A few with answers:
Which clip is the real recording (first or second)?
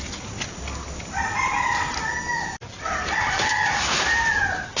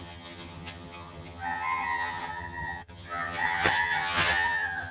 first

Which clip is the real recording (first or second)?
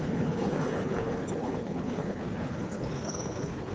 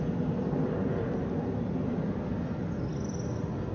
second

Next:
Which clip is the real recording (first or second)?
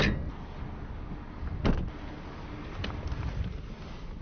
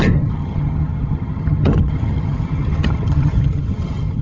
first